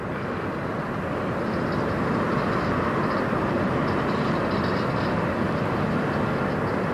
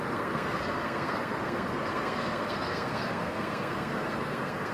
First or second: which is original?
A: first